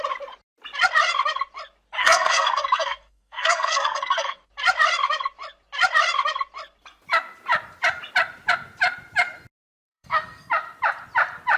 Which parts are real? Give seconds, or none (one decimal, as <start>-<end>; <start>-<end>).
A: 0.0-2.0; 4.4-9.8; 10.5-11.6